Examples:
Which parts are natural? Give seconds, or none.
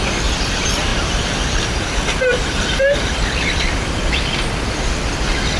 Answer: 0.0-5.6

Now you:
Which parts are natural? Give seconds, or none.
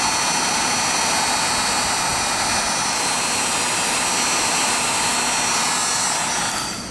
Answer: 0.0-6.9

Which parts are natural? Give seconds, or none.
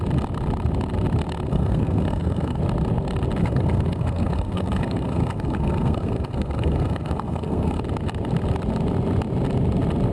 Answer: 0.0-1.5; 2.6-3.4; 7.8-10.1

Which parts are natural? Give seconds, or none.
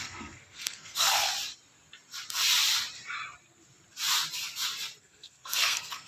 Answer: 1.3-5.0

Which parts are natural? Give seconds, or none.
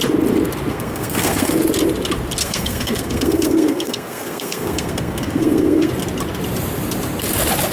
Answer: 0.0-0.7; 1.6-2.4; 5.9-7.7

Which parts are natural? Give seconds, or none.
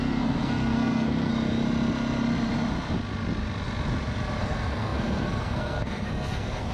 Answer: 1.3-4.4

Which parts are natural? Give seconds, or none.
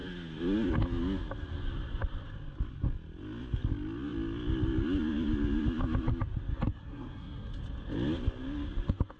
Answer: 0.0-6.8; 7.6-9.2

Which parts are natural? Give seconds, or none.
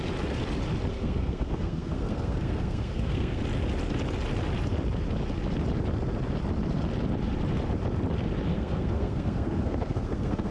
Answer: 0.0-0.9; 3.4-8.5